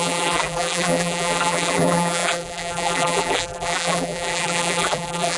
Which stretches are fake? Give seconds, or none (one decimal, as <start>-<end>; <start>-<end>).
0.0-5.4